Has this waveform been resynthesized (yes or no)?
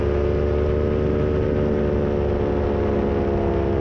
no